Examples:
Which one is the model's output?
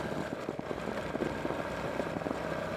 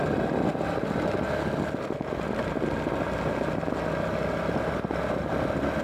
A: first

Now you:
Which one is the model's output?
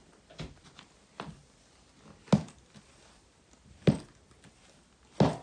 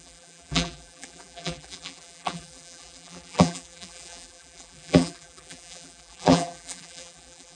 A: second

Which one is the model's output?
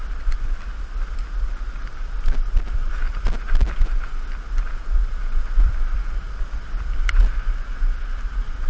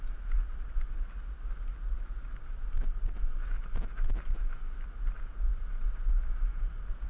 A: first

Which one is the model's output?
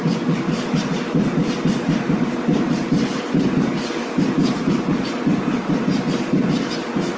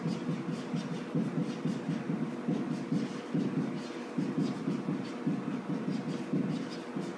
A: first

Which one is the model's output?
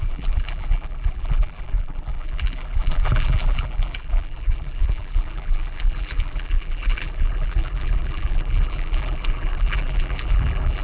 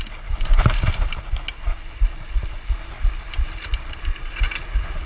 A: first